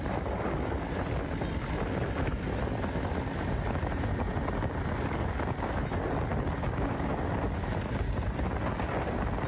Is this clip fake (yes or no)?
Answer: no